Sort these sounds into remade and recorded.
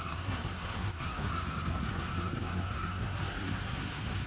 remade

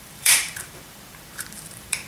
remade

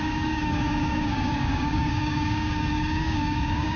remade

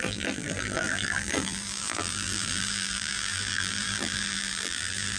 remade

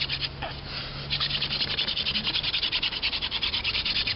recorded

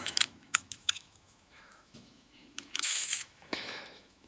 remade